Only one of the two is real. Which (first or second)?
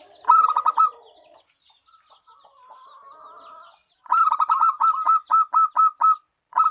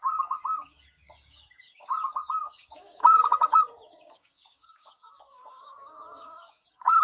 first